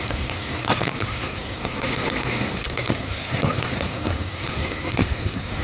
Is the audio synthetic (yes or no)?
yes